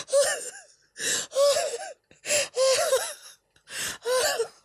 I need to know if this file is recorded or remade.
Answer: recorded